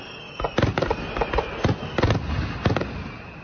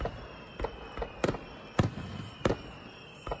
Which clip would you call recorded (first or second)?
first